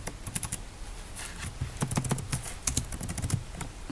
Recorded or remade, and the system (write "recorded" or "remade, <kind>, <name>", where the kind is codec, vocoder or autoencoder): recorded